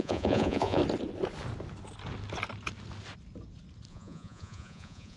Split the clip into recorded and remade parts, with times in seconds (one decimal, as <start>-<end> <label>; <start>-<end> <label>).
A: 0.0-0.8 remade; 0.8-3.9 recorded; 3.9-5.2 remade